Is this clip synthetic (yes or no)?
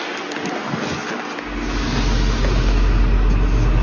no